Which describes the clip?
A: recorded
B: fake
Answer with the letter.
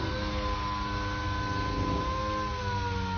A